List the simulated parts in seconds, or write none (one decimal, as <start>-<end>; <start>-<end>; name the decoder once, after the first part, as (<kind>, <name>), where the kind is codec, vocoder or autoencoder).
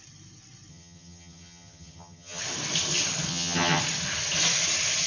0.7-2.4 (vocoder, HiFi-GAN); 3.3-3.8